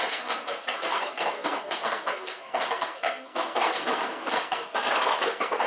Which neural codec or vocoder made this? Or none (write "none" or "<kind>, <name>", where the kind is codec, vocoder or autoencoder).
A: codec, SNAC